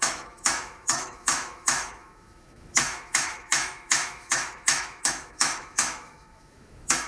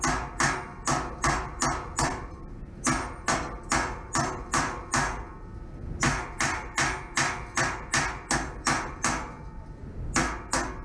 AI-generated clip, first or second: first